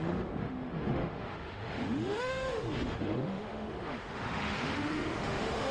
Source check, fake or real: fake